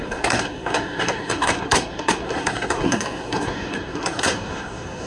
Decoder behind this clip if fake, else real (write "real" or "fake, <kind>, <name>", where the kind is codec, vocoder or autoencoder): fake, codec, SNAC